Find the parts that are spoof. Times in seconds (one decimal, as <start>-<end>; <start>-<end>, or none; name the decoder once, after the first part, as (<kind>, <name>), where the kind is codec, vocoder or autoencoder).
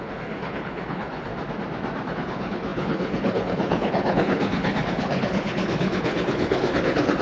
0.0-1.3 (codec, HILCodec); 2.1-7.2